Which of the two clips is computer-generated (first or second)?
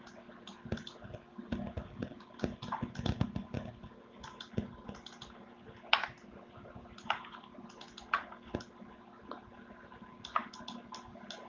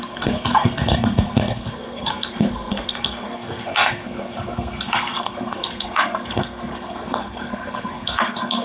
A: second